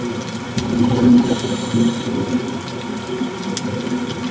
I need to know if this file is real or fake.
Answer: real